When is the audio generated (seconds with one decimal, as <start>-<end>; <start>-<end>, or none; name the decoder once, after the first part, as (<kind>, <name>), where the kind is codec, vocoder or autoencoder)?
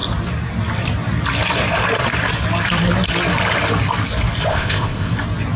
4.5-5.1 (codec, ZipCodec)